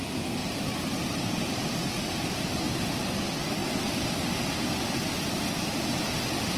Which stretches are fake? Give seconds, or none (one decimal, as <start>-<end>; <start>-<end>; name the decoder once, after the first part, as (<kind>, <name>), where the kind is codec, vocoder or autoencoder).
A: 0.4-2.5 (vocoder, BigVGAN v2)